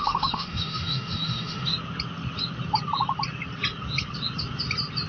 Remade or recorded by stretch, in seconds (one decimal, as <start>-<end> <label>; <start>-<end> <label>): 0.0-1.7 remade; 1.7-5.1 recorded